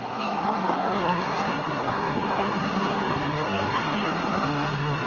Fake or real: fake